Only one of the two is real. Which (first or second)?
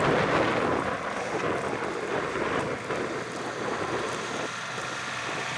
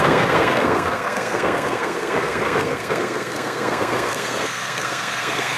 first